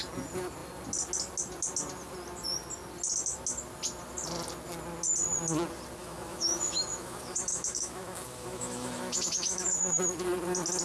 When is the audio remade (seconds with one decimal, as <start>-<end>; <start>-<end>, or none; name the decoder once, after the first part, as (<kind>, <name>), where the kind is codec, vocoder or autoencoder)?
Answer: 6.0-10.0 (autoencoder, DAC-VAE)